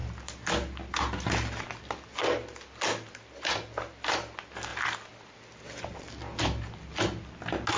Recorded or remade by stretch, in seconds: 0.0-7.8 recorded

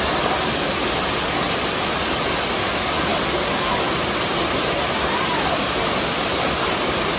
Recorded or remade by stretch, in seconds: 0.0-7.2 recorded

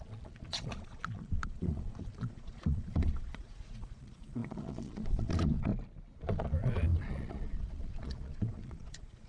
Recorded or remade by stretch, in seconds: 0.0-5.7 remade; 5.7-6.2 recorded; 6.2-9.3 remade

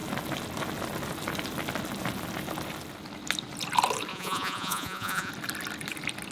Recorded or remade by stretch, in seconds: 0.0-4.1 recorded; 4.1-5.3 remade; 5.3-6.3 recorded

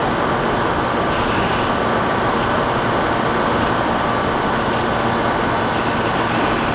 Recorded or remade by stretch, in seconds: 0.0-6.7 recorded

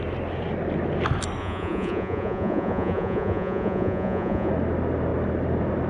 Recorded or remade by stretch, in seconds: 0.0-1.4 recorded; 1.4-4.5 remade; 4.5-5.9 recorded

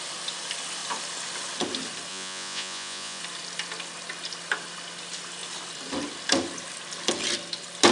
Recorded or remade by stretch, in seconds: 0.0-2.1 recorded; 2.1-3.2 remade; 3.2-7.9 recorded

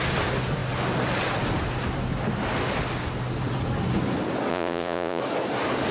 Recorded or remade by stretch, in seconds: 0.0-4.5 recorded; 4.5-5.2 remade; 5.2-5.9 recorded